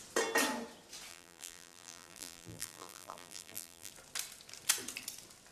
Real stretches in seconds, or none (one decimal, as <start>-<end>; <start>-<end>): 0.0-1.1; 3.9-5.5